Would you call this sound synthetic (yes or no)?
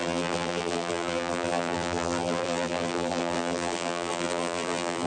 yes